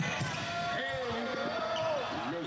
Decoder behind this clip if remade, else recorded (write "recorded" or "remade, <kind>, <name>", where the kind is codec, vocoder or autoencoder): recorded